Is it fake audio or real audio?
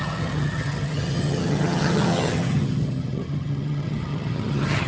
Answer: fake